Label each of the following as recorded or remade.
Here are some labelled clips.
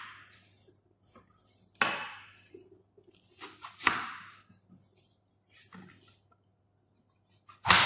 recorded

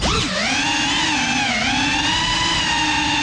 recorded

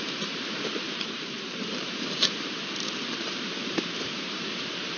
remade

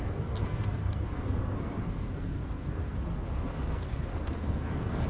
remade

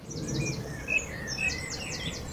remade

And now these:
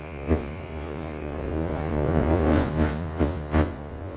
remade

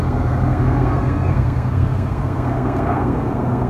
remade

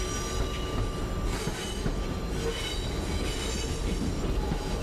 recorded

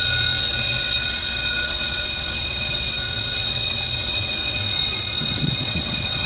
remade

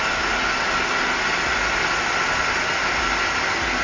recorded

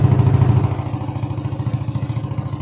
recorded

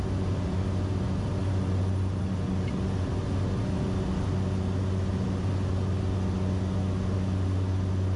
recorded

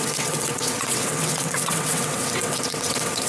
remade